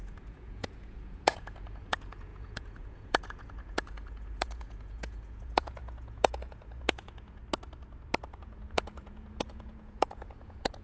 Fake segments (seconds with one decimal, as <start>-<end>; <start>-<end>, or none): 0.0-7.4; 8.4-10.8